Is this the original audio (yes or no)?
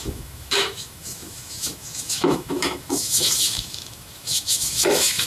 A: no